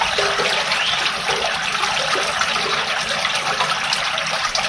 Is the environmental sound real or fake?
real